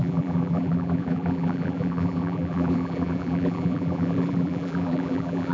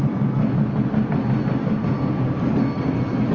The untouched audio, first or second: second